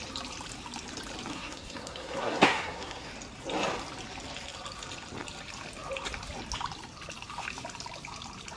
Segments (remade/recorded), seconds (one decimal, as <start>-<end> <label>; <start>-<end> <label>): 0.0-1.3 recorded; 1.3-3.1 remade; 3.1-8.6 recorded